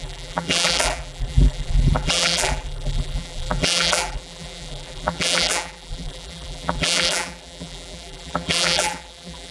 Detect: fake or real fake